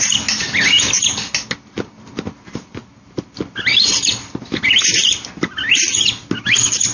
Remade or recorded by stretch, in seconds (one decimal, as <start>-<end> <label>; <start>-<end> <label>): 0.0-6.9 recorded